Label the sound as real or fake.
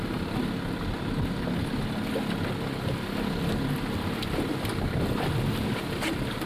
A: real